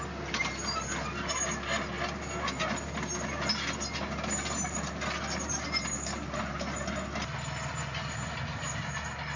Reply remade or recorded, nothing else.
recorded